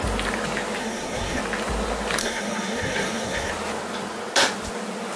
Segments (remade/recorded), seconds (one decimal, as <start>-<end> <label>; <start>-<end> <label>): 0.0-0.8 recorded; 0.8-1.4 remade; 1.4-2.2 recorded; 2.2-3.5 remade; 3.5-5.2 recorded

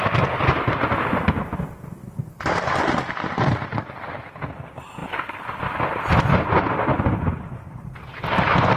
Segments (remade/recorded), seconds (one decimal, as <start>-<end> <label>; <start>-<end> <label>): 0.0-8.8 recorded

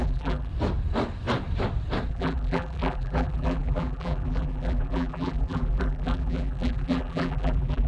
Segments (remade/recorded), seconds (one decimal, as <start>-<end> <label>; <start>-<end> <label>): 0.0-0.5 remade; 0.5-2.1 recorded; 2.1-7.9 remade

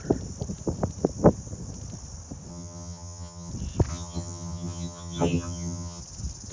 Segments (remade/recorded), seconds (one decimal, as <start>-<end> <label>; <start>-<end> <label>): 0.0-2.5 recorded; 2.5-3.5 remade; 3.5-3.9 recorded; 3.9-6.0 remade; 6.0-6.5 recorded

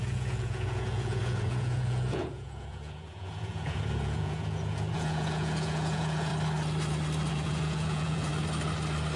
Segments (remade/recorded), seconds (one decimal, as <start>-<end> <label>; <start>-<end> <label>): 0.0-6.3 remade; 6.3-7.3 recorded; 7.3-8.3 remade; 8.3-9.2 recorded

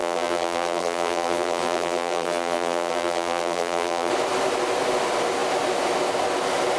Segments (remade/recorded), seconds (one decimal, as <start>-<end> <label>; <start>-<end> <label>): 0.0-4.1 remade; 4.1-6.8 recorded

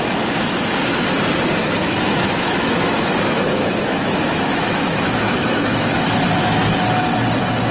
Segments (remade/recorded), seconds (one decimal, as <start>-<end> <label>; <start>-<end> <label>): 0.0-1.6 recorded; 1.6-6.2 remade; 6.2-7.7 recorded